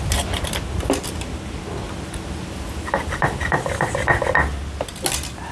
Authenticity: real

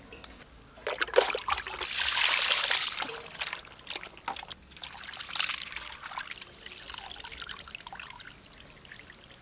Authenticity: real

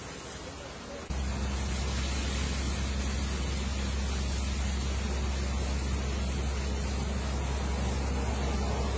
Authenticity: real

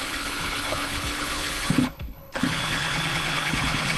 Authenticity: fake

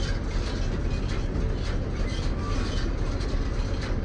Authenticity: real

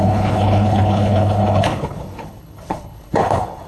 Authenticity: fake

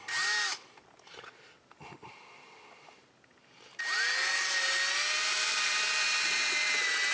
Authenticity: real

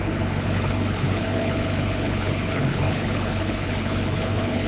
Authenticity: fake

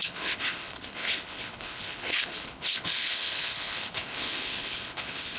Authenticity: fake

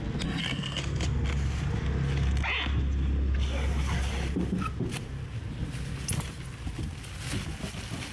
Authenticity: real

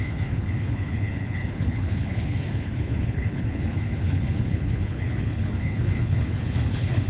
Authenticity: fake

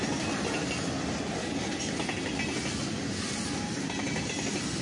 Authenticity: real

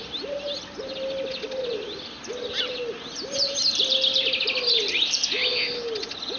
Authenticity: real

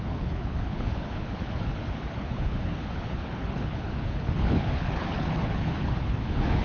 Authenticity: fake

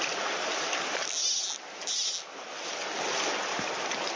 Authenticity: real